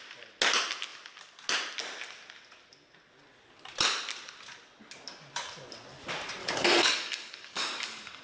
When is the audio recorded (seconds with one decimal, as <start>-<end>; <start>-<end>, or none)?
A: 0.0-6.4